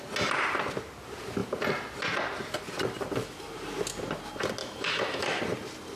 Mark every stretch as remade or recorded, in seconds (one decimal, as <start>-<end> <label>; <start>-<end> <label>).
0.0-4.6 recorded; 4.6-5.4 remade; 5.4-6.0 recorded